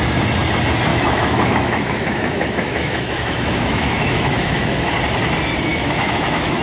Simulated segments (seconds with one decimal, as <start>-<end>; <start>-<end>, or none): 0.9-4.9; 5.7-6.6